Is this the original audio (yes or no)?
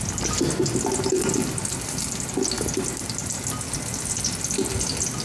yes